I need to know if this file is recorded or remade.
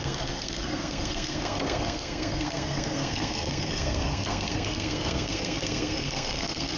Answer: remade